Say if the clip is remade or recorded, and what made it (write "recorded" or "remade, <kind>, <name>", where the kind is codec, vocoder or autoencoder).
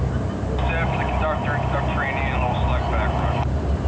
recorded